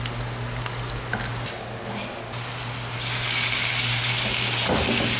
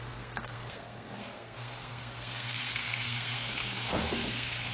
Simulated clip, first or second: second